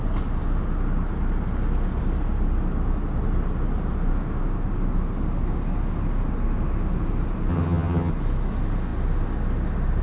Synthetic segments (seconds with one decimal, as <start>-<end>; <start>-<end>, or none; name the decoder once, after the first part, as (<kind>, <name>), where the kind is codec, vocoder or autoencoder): 7.5-8.1 (vocoder, HiFi-GAN)